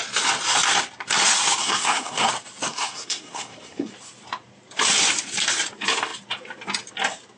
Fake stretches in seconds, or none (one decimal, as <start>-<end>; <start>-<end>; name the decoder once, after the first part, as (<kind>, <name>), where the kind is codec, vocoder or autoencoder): 1.6-2.3 (codec, SNAC); 2.7-3.9